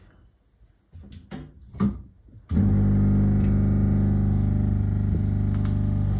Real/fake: real